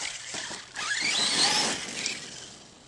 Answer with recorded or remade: recorded